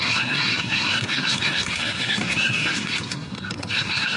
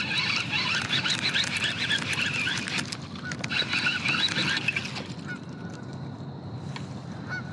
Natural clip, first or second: second